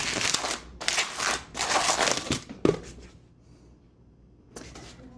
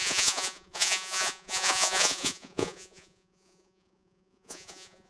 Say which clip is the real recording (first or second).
first